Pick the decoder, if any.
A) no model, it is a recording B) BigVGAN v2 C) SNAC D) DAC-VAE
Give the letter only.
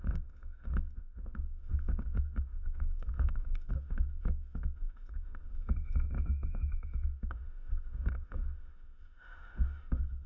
D